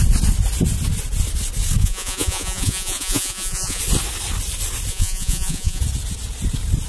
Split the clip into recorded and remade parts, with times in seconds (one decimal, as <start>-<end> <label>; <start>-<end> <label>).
0.0-1.8 recorded; 1.8-3.8 remade; 3.8-4.9 recorded; 4.9-5.8 remade; 5.8-6.9 recorded